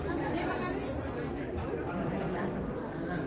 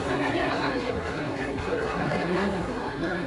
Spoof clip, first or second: second